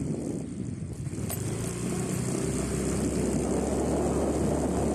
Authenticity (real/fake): real